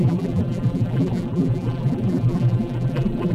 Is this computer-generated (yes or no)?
yes